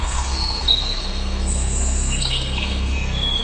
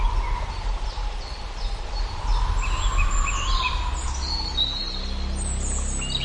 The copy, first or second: first